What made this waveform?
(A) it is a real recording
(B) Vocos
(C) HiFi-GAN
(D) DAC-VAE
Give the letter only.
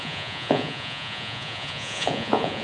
B